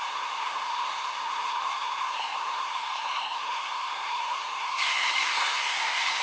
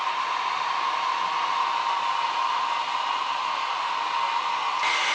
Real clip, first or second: second